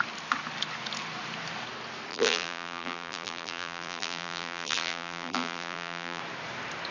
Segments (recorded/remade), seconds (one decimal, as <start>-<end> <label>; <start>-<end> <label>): 0.0-2.1 recorded; 2.1-6.2 remade; 6.2-6.9 recorded